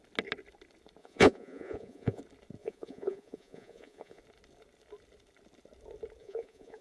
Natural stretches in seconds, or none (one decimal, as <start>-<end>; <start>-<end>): 0.0-1.0; 2.2-2.6; 4.2-6.2